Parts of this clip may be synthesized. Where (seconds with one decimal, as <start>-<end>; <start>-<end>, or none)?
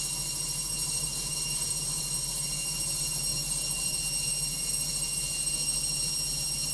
0.8-1.3; 3.3-4.0